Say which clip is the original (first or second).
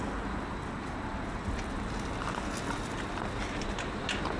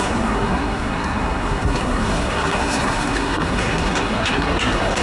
first